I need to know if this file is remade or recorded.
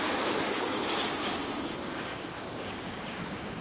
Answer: remade